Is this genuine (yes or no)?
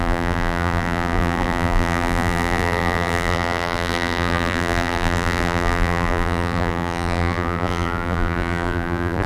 no